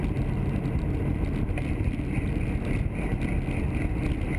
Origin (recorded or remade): recorded